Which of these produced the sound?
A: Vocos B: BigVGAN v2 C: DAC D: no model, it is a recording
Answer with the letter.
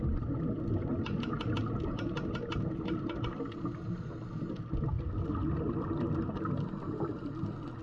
D